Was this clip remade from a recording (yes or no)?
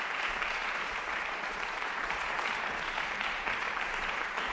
yes